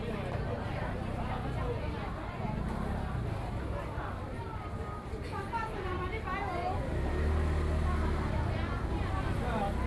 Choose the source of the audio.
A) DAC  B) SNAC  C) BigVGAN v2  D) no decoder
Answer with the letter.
D